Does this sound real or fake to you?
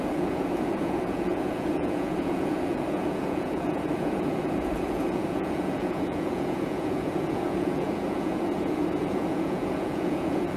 fake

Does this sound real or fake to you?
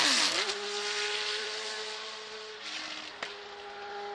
real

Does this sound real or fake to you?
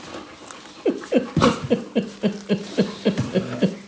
real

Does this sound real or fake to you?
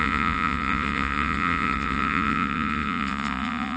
fake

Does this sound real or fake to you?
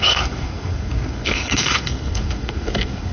fake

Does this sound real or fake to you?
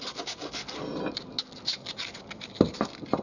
real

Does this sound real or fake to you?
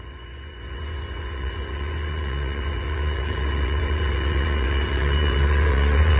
fake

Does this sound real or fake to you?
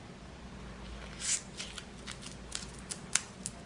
real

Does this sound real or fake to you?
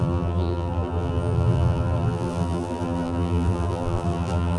fake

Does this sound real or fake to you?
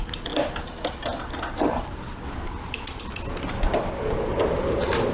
real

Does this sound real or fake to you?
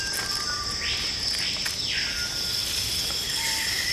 real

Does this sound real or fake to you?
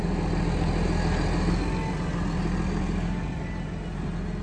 real